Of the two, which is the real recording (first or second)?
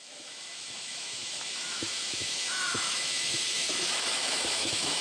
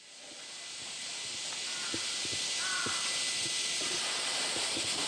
second